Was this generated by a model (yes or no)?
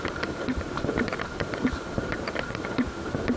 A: yes